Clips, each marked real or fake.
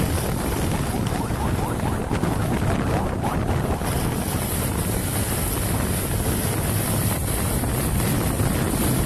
real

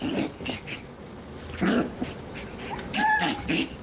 real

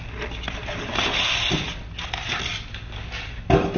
real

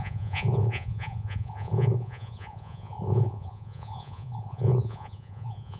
fake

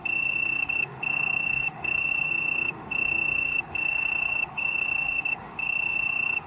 fake